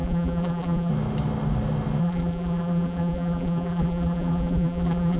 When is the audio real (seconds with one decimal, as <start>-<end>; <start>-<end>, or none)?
0.9-2.0